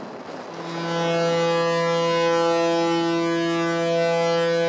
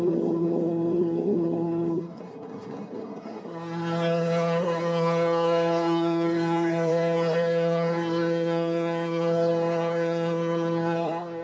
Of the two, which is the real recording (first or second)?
first